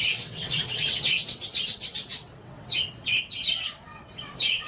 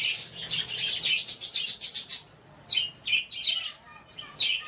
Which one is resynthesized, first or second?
first